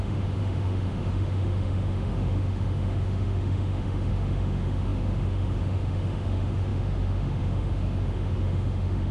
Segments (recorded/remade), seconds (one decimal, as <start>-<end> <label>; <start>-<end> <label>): 0.0-9.1 remade